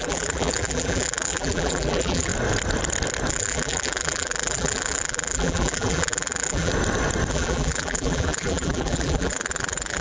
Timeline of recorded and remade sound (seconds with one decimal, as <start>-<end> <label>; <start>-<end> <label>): 0.0-2.3 remade; 2.3-3.3 recorded; 3.3-6.7 remade; 6.7-7.3 recorded; 7.3-10.0 remade